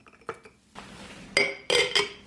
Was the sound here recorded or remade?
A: recorded